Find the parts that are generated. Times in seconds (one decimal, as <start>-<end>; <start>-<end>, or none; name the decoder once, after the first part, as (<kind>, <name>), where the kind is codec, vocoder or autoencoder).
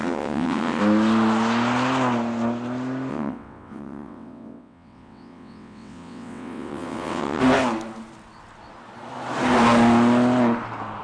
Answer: 0.0-0.8 (vocoder, WaveNeXt); 3.1-7.4